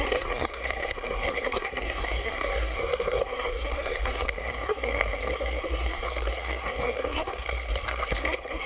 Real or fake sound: fake